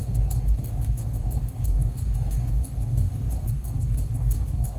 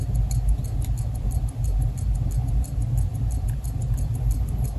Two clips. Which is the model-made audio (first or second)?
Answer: first